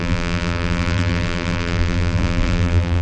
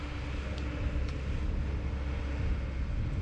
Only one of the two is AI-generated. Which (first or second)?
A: first